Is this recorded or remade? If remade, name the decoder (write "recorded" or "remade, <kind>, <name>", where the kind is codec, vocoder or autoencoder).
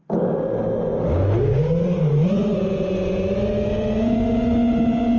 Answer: recorded